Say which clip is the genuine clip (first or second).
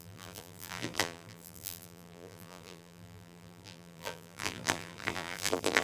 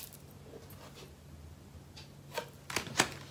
second